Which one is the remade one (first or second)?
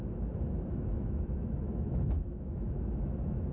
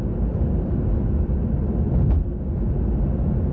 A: first